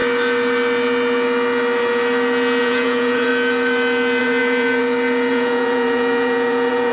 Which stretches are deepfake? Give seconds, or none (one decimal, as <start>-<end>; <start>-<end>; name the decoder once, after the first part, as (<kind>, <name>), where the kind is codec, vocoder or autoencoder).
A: 2.6-3.3 (vocoder, Vocos); 4.2-4.8; 5.3-6.9